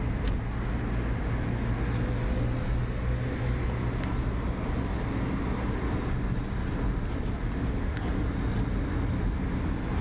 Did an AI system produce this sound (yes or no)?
no